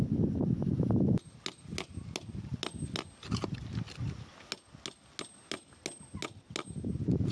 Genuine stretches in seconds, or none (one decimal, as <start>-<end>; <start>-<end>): 0.0-7.3

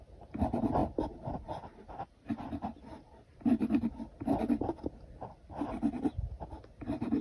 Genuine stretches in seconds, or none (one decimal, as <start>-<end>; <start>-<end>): 0.0-7.2

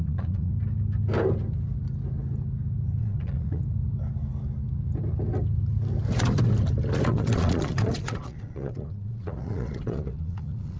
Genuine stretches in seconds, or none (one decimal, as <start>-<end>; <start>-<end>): 0.5-3.0; 3.6-7.1

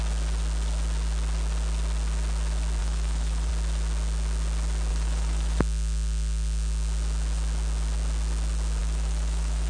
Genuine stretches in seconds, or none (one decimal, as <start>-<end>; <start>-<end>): 0.0-2.8; 3.5-4.9; 5.6-8.8